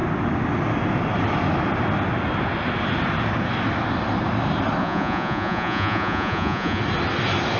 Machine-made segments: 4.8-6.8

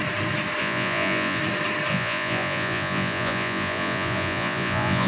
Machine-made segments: 0.6-1.4; 1.9-5.1

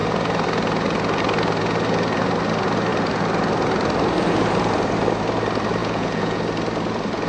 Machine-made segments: 5.8-6.4

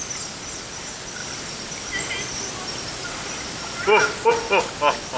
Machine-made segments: none

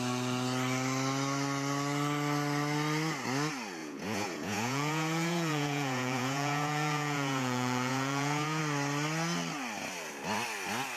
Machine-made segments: 3.8-8.6